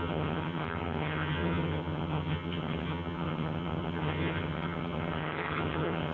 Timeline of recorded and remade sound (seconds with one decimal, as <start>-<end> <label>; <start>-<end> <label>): 0.0-6.1 remade